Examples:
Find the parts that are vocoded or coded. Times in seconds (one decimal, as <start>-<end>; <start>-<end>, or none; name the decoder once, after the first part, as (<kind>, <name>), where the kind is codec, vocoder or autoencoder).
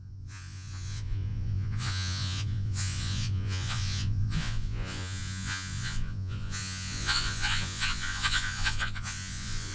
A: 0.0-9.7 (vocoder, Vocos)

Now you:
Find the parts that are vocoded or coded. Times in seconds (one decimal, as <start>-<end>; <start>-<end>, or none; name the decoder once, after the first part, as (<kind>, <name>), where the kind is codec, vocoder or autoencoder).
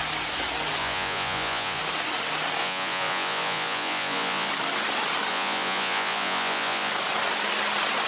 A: 0.8-1.8 (vocoder, Vocos); 2.6-4.5; 5.3-6.9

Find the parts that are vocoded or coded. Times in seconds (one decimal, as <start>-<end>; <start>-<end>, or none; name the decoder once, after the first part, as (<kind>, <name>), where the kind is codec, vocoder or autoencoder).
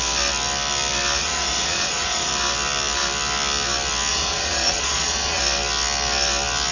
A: 1.2-2.3 (vocoder, Vocos); 4.1-5.4